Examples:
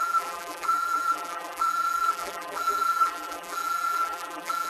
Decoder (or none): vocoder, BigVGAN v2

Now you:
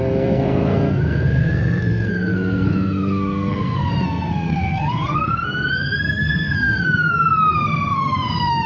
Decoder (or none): codec, SNAC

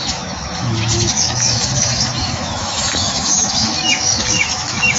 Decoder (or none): autoencoder, DAC-VAE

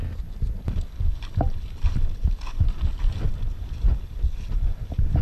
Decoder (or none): none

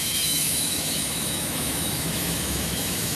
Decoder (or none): autoencoder, DAC-VAE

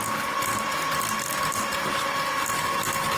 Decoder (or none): none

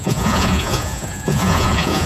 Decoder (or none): vocoder, Vocos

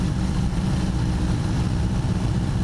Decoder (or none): vocoder, BigVGAN v2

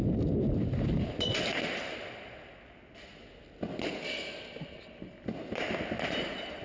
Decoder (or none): none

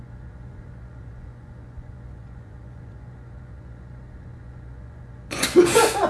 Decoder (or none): vocoder, Vocos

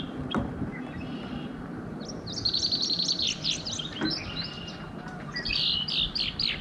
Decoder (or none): vocoder, BigVGAN v2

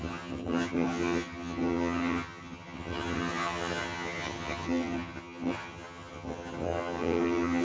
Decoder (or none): vocoder, HiFi-GAN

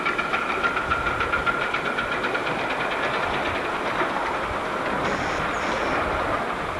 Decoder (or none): none